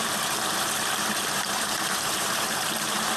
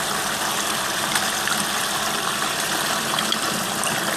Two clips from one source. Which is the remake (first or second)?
first